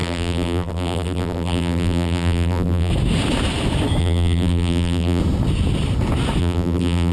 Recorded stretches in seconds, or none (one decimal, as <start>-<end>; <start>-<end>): 2.9-4.0; 5.2-6.4